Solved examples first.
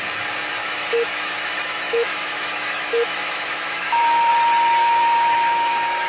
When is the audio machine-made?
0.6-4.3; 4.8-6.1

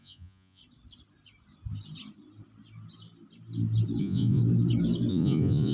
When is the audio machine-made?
0.0-0.6; 4.0-4.4; 5.1-5.7

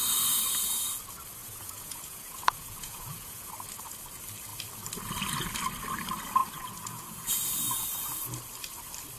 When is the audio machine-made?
1.4-3.5; 6.4-7.3

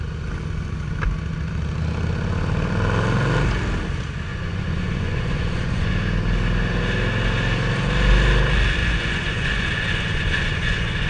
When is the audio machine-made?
4.3-5.9; 8.8-11.1